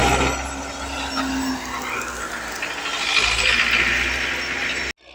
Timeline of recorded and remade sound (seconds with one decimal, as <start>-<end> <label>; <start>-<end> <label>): 0.0-5.1 recorded